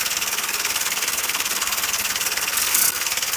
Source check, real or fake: fake